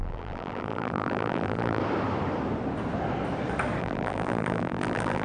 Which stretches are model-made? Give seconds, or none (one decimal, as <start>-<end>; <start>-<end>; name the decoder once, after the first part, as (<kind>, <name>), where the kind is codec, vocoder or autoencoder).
0.0-1.8 (vocoder, BigVGAN v2); 3.8-5.2